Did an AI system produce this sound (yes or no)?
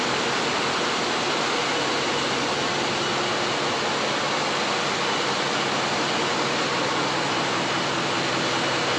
no